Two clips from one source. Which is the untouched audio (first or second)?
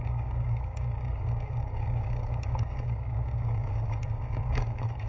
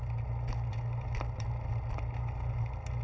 second